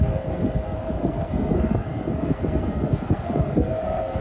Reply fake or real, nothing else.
fake